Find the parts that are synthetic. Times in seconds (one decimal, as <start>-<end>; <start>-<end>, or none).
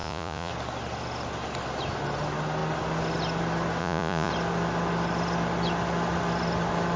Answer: 0.0-0.5; 3.8-4.3